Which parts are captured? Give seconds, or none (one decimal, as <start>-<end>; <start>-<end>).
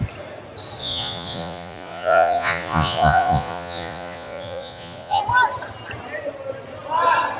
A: 0.0-0.8; 5.2-7.4